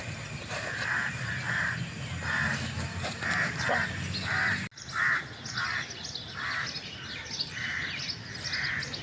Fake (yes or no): no